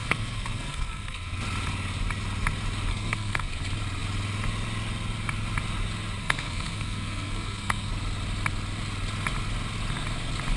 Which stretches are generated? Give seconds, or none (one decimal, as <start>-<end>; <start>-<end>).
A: 0.0-1.4; 2.9-3.5; 6.2-7.9

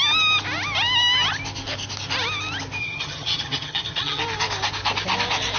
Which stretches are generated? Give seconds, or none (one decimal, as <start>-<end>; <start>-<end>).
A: 2.8-4.2

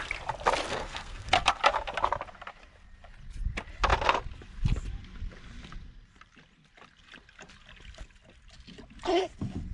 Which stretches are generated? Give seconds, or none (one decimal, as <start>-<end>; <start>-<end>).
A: 0.7-1.6

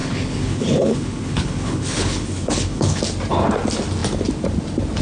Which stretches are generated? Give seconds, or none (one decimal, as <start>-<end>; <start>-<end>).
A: 0.0-3.0

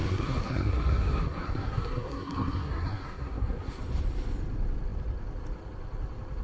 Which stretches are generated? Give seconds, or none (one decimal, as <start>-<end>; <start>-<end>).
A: 0.0-3.8